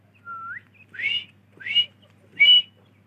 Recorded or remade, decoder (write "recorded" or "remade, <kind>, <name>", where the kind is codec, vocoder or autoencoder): recorded